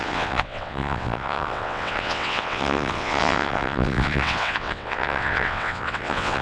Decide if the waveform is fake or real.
fake